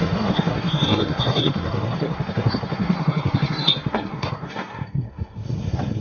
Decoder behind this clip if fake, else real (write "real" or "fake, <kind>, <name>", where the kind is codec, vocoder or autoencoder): fake, codec, SNAC